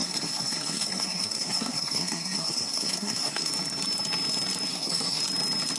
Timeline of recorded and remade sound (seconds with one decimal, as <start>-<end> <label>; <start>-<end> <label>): 0.0-3.5 remade; 3.5-4.7 recorded; 4.7-5.2 remade; 5.2-5.8 recorded